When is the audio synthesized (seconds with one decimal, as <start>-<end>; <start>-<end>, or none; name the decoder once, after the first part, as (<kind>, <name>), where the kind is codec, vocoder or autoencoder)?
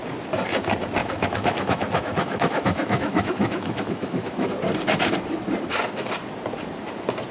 1.0-4.5 (autoencoder, DAC-VAE)